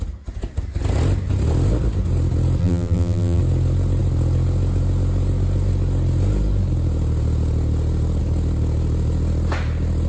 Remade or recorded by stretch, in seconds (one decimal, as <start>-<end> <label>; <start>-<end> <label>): 0.0-2.6 recorded; 2.6-3.4 remade; 3.4-10.1 recorded